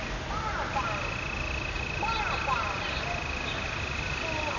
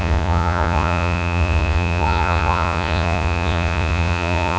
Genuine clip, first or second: first